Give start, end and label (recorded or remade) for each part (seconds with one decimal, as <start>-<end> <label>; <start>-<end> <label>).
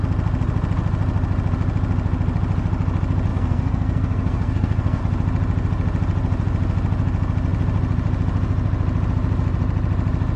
0.0-3.3 recorded; 3.3-5.0 remade; 5.0-10.4 recorded